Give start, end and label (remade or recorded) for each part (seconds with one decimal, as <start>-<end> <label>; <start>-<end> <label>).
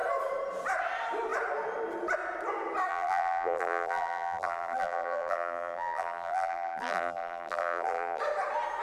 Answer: 0.0-2.9 recorded; 2.9-8.2 remade; 8.2-8.8 recorded